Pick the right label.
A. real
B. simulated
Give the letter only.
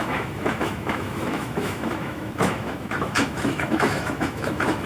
B